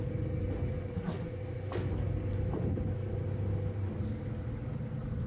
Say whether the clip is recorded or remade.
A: recorded